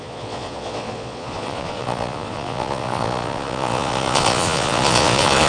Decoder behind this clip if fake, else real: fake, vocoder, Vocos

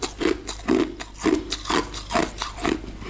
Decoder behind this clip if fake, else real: real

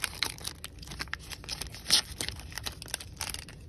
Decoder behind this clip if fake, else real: real